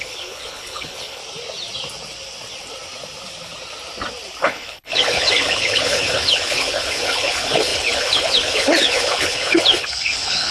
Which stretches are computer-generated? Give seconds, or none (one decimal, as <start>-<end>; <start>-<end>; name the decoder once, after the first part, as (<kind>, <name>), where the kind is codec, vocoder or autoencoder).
0.0-1.2 (codec, HILCodec); 4.4-10.5